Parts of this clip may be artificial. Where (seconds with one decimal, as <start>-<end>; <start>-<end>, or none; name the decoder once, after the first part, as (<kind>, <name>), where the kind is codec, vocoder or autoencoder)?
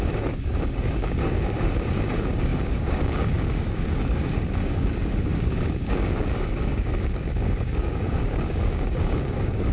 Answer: 0.0-9.7 (codec, DAC)